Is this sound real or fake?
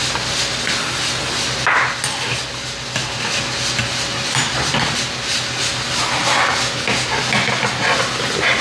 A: real